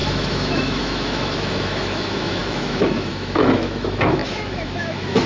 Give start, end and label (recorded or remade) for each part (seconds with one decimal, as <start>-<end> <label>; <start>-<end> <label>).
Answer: 0.0-5.3 remade